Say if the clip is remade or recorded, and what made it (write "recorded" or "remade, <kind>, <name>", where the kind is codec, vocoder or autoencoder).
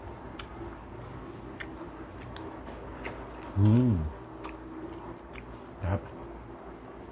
recorded